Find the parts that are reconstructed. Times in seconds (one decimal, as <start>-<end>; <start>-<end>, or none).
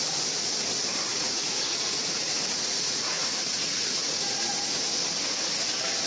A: 1.1-4.8